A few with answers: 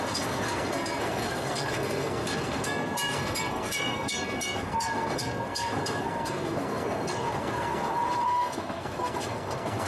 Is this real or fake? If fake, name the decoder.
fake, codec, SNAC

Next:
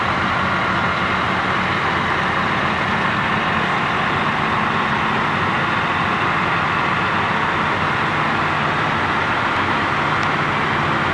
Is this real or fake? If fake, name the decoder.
real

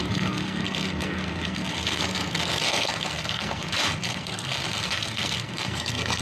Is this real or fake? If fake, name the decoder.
fake, codec, SNAC